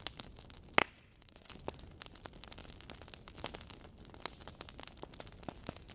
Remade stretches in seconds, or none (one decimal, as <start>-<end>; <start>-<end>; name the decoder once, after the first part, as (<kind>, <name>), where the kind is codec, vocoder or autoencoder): 0.8-1.5 (vocoder, WaveNeXt)